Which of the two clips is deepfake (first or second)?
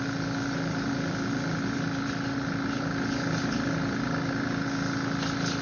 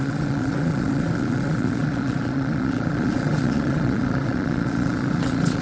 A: second